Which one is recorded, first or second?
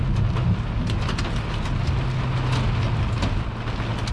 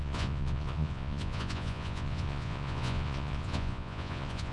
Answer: first